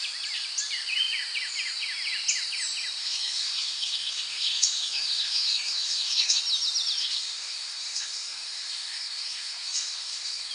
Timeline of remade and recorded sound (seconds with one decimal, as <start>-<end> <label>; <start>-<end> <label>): 0.0-3.0 recorded; 3.0-6.4 remade; 6.4-7.0 recorded; 7.0-10.5 remade

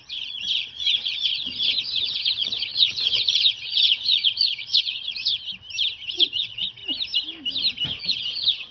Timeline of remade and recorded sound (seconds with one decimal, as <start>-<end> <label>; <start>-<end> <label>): 0.0-5.3 remade; 5.3-6.1 recorded; 6.1-6.8 remade; 6.8-8.0 recorded; 8.0-8.7 remade

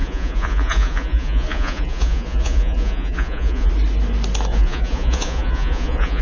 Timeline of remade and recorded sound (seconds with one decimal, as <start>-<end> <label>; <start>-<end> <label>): 0.0-3.7 remade; 3.7-4.5 recorded; 4.5-6.2 remade

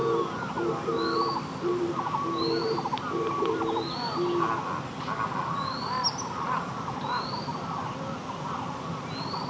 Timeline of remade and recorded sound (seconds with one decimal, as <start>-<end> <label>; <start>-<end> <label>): 0.0-9.5 recorded

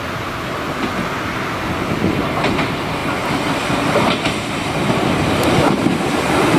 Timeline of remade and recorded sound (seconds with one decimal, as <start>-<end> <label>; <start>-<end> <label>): 0.0-6.6 recorded

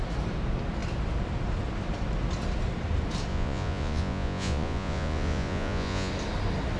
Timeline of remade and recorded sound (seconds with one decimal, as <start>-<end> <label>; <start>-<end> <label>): 0.0-3.3 recorded; 3.3-6.1 remade; 6.1-6.8 recorded

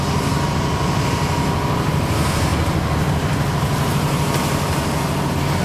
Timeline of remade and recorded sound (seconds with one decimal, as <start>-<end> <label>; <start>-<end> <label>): 0.0-5.6 recorded

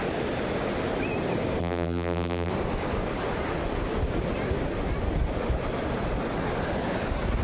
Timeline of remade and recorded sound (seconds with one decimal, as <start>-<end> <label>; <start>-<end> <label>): 0.0-1.6 recorded; 1.6-2.5 remade; 2.5-7.4 recorded